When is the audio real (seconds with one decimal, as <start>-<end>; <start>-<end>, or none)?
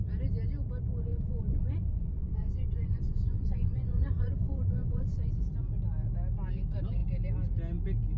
0.0-1.1; 5.3-8.2